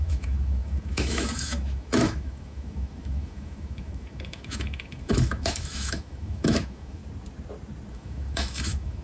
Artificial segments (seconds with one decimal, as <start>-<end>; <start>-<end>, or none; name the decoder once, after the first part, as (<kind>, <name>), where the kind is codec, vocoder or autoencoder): 0.0-7.0 (autoencoder, DAC-VAE); 7.9-9.0